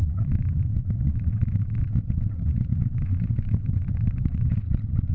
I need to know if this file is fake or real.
fake